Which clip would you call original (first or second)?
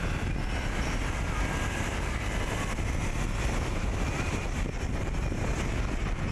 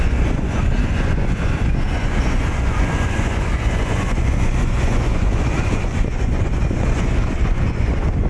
first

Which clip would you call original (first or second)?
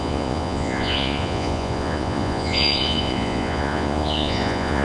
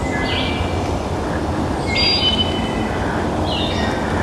second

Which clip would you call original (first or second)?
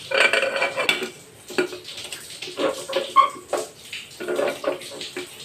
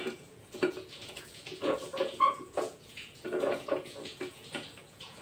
first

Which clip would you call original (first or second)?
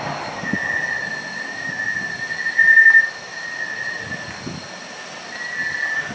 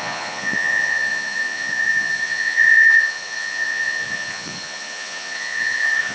first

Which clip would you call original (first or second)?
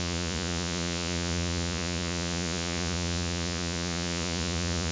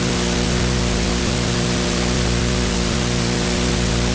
second